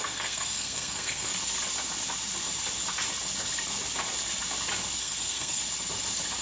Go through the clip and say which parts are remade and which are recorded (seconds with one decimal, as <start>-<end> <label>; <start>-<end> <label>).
0.0-1.3 remade; 1.3-5.0 recorded; 5.0-5.6 remade; 5.6-6.4 recorded